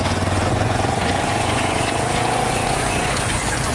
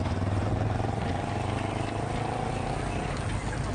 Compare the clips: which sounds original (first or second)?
second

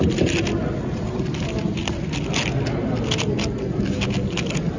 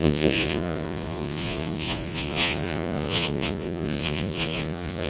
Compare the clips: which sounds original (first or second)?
first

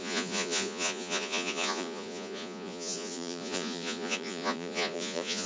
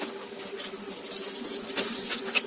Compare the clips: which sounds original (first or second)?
second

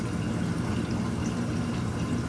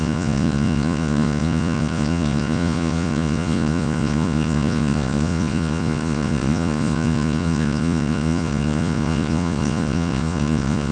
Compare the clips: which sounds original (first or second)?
first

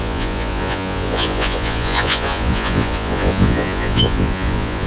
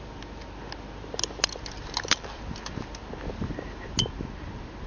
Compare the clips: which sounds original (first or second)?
second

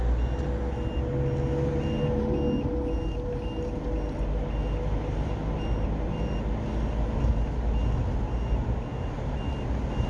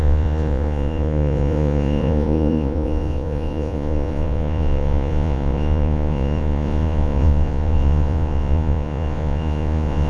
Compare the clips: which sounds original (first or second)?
first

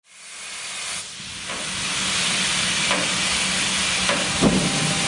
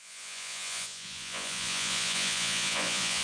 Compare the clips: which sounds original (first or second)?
first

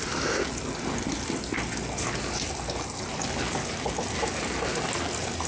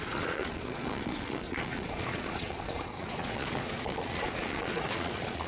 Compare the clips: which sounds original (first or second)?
first